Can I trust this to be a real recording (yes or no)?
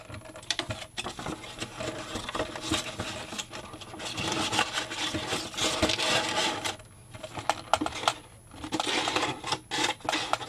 yes